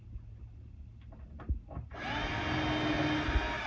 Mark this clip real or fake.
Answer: real